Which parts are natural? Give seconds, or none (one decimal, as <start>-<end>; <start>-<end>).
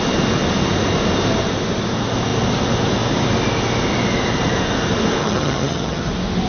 0.0-5.2; 6.1-6.5